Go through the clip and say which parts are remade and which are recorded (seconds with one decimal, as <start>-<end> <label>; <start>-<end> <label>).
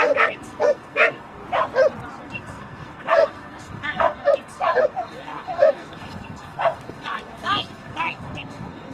0.0-1.4 remade; 1.4-2.2 recorded; 2.2-8.9 remade